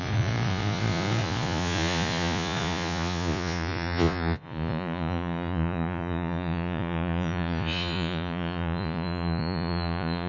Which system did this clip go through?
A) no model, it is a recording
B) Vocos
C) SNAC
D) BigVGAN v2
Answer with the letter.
B